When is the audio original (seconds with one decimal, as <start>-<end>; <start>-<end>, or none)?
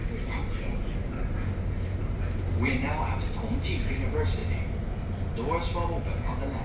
0.0-2.0; 2.5-6.6